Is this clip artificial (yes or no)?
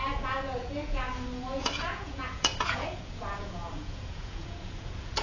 yes